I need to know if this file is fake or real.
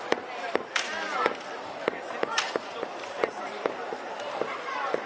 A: fake